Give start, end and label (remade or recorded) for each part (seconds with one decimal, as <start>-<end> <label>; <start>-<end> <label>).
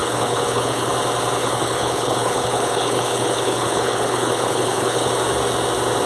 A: 0.0-0.9 remade; 0.9-1.4 recorded; 1.4-5.1 remade; 5.1-6.1 recorded